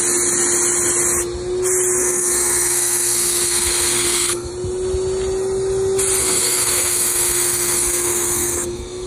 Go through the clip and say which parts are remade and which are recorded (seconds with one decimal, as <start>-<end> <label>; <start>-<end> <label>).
0.0-2.0 recorded; 2.0-4.5 remade; 4.5-6.2 recorded; 6.2-9.1 remade